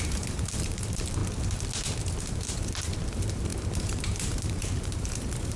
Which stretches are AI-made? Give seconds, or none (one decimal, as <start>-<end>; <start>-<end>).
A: 0.0-1.2; 2.2-5.6